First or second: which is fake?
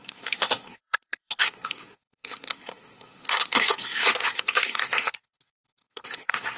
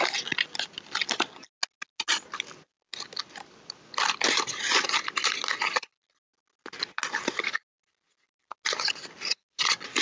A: first